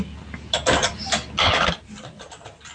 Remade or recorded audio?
recorded